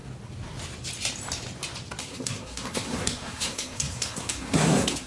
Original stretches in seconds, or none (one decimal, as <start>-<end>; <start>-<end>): 0.0-2.0